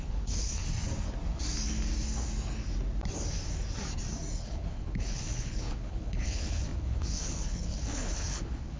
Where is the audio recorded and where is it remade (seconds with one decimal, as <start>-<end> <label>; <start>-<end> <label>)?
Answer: 0.0-0.6 remade; 0.6-4.4 recorded; 4.4-8.8 remade